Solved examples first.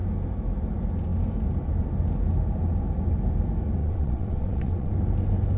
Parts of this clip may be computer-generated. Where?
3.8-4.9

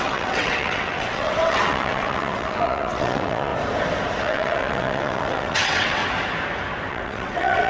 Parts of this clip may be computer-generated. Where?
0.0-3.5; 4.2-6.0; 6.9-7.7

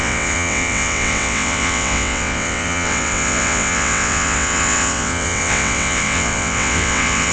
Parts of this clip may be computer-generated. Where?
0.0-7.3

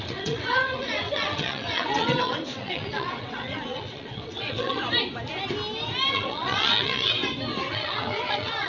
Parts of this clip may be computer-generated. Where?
0.0-4.8; 6.1-7.2; 7.7-8.7